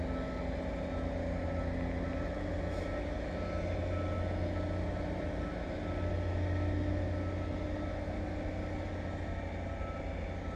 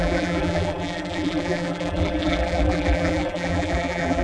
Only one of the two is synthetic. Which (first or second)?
second